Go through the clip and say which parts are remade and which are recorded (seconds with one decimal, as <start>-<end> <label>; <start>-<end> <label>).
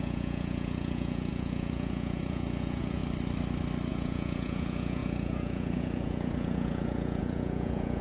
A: 0.0-3.0 remade; 3.0-3.9 recorded; 3.9-8.0 remade